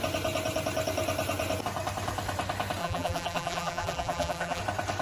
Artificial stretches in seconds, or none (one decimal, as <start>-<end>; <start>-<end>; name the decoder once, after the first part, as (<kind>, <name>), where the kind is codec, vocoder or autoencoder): 2.8-4.6 (vocoder, BigVGAN v2)